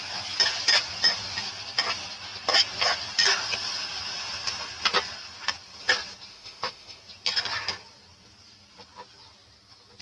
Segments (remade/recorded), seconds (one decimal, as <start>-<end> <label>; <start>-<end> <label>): 0.0-6.3 recorded; 6.3-7.0 remade; 7.0-10.0 recorded